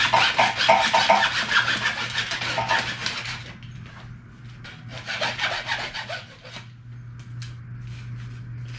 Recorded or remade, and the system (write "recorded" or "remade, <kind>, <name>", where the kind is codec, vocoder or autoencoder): recorded